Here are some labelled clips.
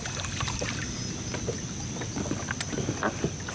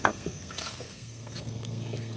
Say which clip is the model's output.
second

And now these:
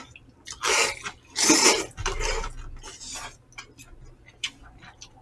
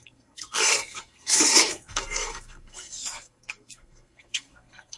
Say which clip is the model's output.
second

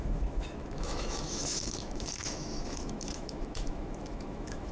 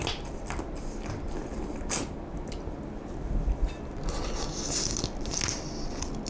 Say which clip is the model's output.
first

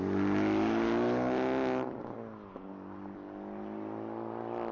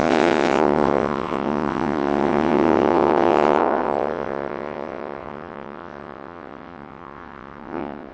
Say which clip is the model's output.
second